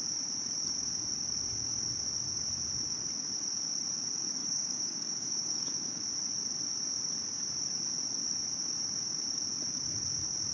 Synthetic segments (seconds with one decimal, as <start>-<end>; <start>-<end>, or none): 4.4-6.0